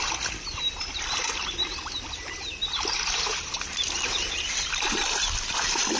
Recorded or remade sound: recorded